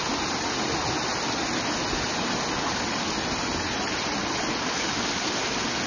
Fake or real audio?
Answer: real